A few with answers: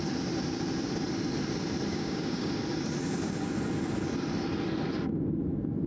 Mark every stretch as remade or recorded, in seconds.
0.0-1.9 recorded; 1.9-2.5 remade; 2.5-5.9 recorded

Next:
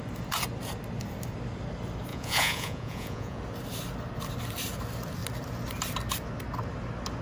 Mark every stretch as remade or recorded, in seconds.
0.0-2.1 recorded; 2.1-3.4 remade; 3.4-7.2 recorded